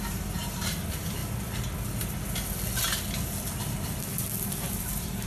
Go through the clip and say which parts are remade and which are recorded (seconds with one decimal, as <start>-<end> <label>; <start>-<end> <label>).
0.0-1.2 remade; 1.2-4.4 recorded; 4.4-5.3 remade